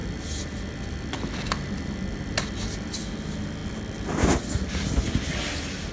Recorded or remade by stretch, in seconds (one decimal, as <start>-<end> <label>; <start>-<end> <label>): 0.0-5.9 recorded